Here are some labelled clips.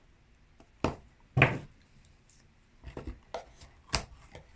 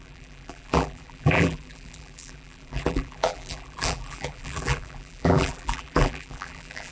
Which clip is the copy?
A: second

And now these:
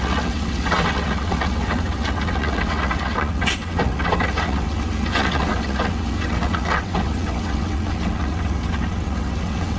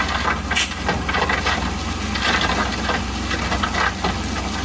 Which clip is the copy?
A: first